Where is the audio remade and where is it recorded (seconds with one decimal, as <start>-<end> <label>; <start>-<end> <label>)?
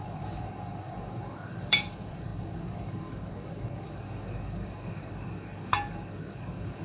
0.0-6.8 remade